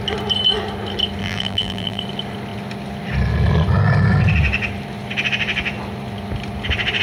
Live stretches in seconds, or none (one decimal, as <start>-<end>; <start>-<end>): 0.0-1.2; 2.0-7.0